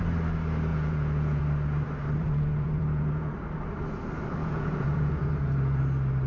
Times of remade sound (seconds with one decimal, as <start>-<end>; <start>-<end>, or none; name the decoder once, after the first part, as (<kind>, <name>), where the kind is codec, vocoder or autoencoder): 0.7-1.4 (vocoder, Vocos); 2.2-3.3; 4.4-5.8